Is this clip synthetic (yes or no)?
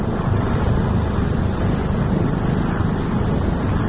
yes